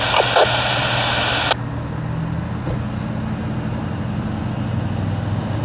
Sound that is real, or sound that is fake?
real